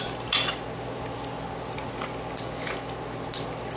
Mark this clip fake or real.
real